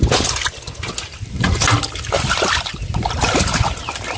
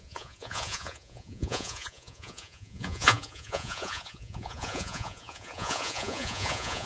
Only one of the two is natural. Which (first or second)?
first